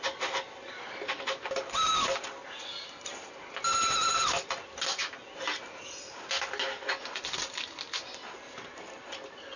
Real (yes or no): yes